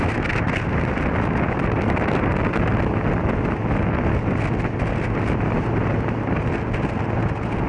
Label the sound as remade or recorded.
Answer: recorded